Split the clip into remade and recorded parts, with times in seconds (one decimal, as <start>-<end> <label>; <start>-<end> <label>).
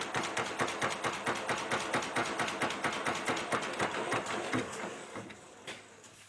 0.0-4.6 recorded; 4.6-6.3 remade